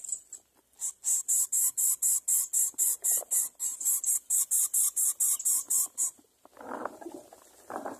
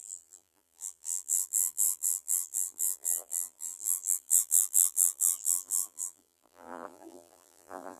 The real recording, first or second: first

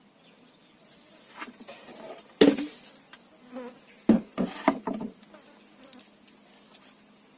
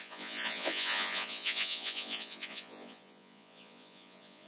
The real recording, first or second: first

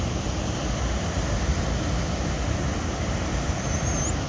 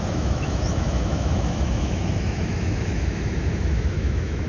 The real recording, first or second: first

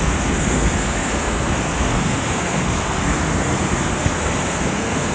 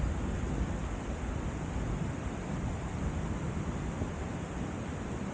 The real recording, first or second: second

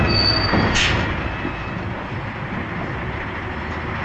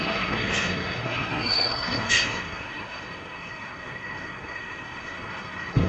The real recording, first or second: first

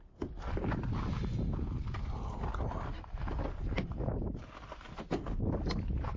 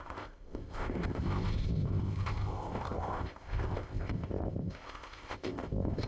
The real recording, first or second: first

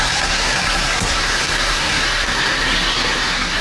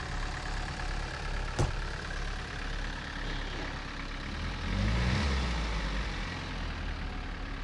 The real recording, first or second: second